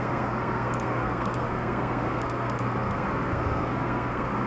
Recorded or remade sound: remade